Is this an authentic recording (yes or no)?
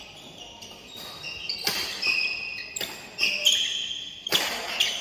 yes